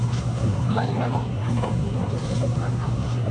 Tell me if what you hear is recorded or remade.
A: remade